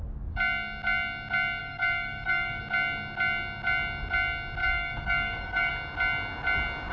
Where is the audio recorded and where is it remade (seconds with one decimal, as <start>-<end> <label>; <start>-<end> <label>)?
0.0-1.6 recorded; 1.6-2.6 remade; 2.6-4.6 recorded; 4.6-5.7 remade; 5.7-6.9 recorded